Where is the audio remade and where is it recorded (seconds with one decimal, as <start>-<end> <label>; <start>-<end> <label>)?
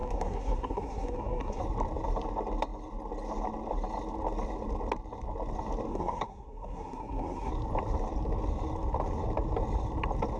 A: 0.0-1.6 remade; 1.6-5.9 recorded; 5.9-7.5 remade; 7.5-10.4 recorded